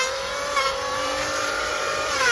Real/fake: fake